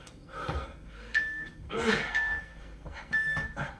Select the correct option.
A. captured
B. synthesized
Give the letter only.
B